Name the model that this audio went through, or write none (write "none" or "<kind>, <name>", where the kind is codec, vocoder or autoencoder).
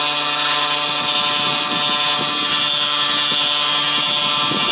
none